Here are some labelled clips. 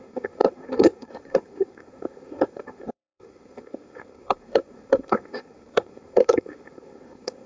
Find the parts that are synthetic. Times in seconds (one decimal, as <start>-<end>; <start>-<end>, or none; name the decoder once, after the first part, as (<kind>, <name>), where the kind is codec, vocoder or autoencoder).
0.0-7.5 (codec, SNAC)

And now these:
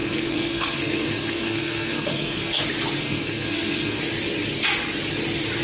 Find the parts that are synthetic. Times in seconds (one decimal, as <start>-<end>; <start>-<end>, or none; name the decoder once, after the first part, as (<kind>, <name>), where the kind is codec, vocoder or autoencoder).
0.0-2.6 (codec, SNAC); 3.0-4.0

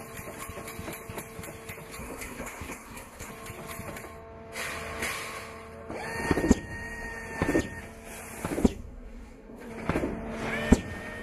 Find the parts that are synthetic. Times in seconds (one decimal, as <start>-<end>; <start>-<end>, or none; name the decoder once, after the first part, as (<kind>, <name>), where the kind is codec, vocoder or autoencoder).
2.0-3.3 (codec, SNAC); 8.7-9.7